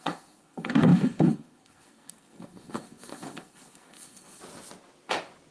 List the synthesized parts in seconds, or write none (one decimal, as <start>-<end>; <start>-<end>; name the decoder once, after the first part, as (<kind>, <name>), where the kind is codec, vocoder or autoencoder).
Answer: 0.0-4.4 (codec, SNAC)